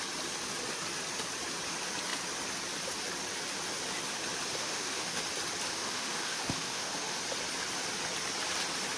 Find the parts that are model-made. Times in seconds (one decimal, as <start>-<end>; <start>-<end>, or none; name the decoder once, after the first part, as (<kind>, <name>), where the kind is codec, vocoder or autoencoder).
4.6-5.2 (autoencoder, DAC-VAE); 5.7-7.2